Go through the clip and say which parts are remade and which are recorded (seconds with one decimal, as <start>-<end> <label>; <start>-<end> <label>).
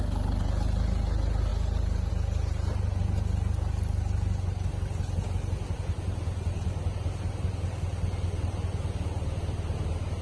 0.0-10.2 recorded